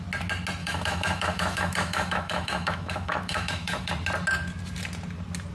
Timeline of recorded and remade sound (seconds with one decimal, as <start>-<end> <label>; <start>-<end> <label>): 0.0-0.6 recorded; 0.6-3.9 remade; 3.9-5.5 recorded